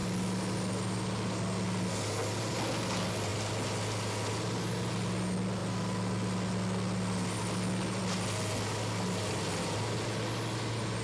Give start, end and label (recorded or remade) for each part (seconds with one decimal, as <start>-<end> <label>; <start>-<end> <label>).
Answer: 0.0-11.0 recorded